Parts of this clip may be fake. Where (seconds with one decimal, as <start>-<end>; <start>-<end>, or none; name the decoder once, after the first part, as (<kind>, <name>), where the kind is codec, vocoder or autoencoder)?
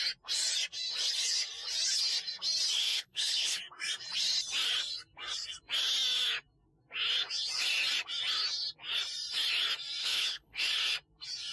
2.8-3.6 (codec, HILCodec); 10.0-10.6